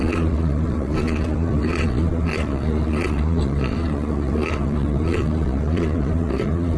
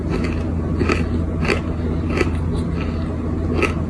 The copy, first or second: first